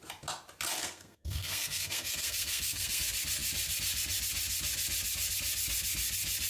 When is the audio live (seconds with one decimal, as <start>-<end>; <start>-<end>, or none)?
0.0-0.8; 3.0-6.5